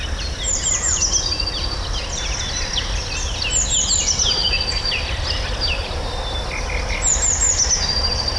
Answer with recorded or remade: recorded